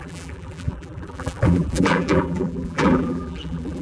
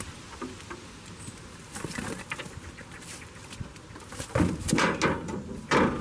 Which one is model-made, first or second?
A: first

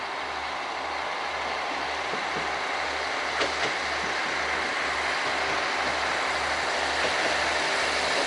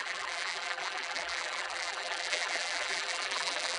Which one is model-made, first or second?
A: second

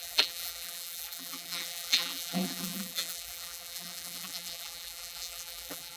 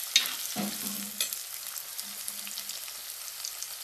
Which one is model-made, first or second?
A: first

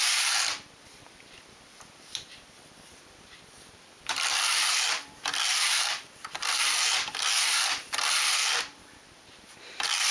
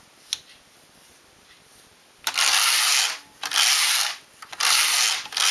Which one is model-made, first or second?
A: first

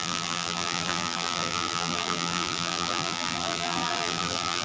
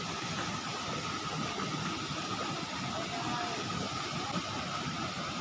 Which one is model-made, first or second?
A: first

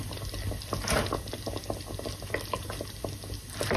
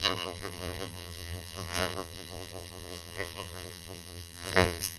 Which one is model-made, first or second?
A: second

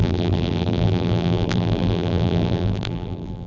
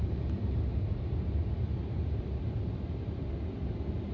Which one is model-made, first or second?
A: first